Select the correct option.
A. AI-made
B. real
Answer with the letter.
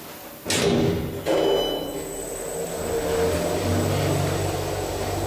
B